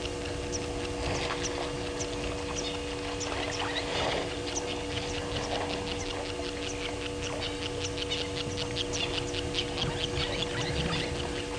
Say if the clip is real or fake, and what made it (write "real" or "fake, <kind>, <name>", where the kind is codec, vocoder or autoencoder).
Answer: real